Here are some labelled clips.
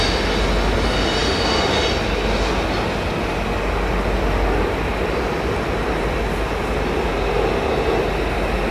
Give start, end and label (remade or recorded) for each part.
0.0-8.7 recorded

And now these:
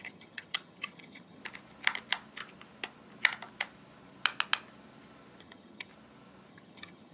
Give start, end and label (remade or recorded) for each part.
0.0-1.4 remade; 1.4-5.4 recorded; 5.4-5.9 remade; 5.9-6.5 recorded; 6.5-7.1 remade

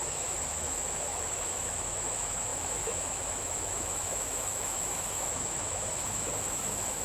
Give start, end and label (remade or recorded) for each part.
0.0-7.0 remade

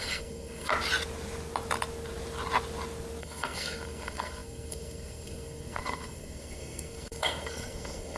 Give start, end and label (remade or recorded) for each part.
0.0-0.7 remade; 0.7-3.2 recorded; 3.2-8.2 remade

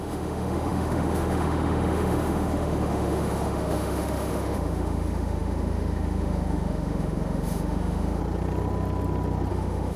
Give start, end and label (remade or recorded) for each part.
0.0-8.2 remade; 8.2-9.5 recorded; 9.5-10.0 remade

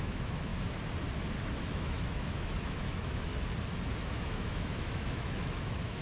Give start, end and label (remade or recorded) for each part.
0.0-0.5 remade; 0.5-1.6 recorded; 1.6-3.3 remade; 3.3-4.0 recorded; 4.0-6.0 remade

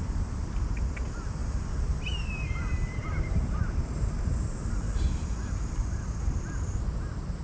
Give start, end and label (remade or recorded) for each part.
0.0-3.0 recorded; 3.0-7.4 remade

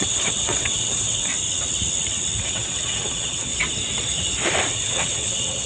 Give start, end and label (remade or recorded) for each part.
0.0-1.3 remade; 1.3-2.4 recorded; 2.4-3.5 remade; 3.5-4.7 recorded; 4.7-5.7 remade